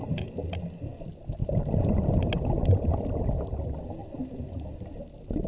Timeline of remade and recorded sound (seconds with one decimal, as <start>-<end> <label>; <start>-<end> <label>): 0.0-5.5 recorded